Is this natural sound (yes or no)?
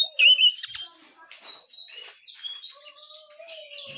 yes